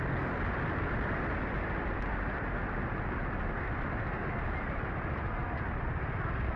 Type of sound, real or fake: real